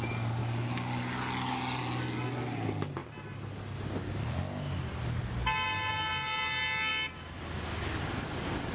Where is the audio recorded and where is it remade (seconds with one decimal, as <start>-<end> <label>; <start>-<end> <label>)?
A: 0.0-8.7 recorded